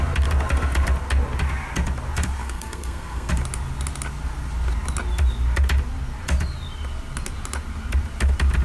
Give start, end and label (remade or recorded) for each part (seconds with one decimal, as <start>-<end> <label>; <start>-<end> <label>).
0.0-2.4 recorded; 2.4-3.3 remade; 3.3-8.6 recorded